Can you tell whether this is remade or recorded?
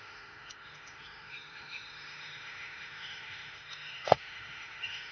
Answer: remade